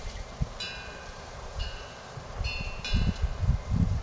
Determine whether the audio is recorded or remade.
remade